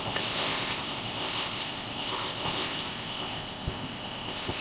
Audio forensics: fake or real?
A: fake